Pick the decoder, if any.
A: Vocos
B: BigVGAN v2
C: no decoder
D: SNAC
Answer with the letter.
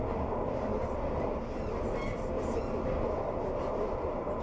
C